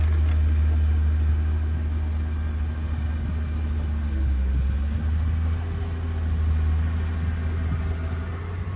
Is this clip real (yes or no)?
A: yes